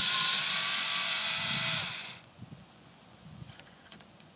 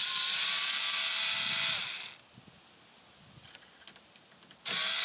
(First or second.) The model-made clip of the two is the first